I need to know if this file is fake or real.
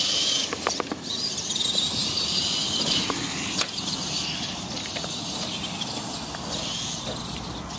real